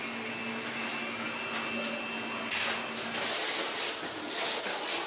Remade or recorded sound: recorded